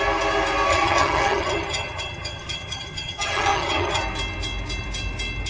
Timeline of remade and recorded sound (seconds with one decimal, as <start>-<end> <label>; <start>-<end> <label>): 0.0-0.7 recorded; 0.7-4.0 remade; 4.0-5.5 recorded